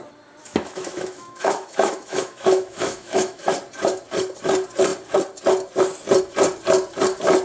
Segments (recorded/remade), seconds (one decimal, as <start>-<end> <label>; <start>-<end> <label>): 0.0-0.4 recorded; 0.4-3.5 remade; 3.5-7.4 recorded